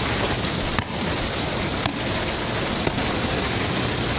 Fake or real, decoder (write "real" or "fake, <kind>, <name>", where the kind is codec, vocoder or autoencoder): real